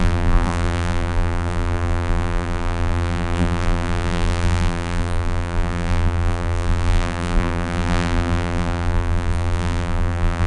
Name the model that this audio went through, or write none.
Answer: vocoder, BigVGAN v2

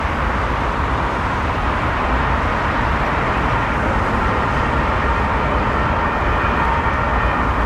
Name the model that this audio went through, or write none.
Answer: vocoder, BigVGAN v2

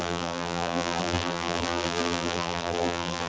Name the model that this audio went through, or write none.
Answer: vocoder, BigVGAN v2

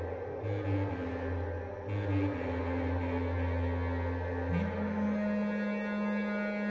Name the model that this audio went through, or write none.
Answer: none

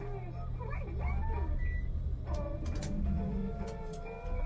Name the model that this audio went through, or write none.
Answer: none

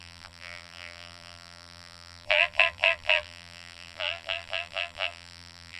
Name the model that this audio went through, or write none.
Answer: vocoder, BigVGAN v2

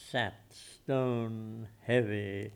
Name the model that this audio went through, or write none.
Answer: none